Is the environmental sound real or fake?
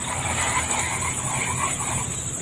real